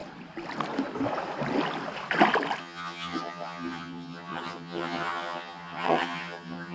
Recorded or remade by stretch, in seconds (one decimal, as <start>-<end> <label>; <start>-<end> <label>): 0.0-2.6 recorded; 2.6-6.7 remade